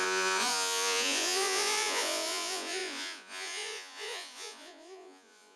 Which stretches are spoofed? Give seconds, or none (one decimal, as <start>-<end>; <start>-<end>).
0.0-5.6